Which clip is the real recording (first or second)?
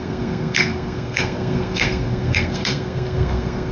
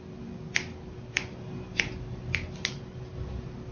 second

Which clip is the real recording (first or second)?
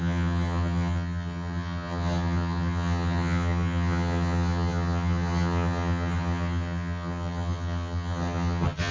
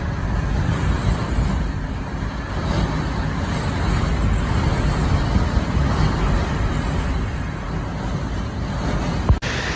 second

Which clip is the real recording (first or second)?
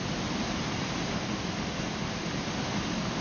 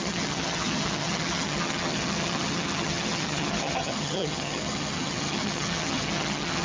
first